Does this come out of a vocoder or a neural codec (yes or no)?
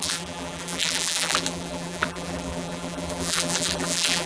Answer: yes